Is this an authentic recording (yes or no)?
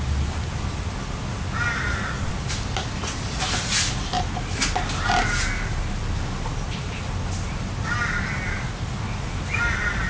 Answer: yes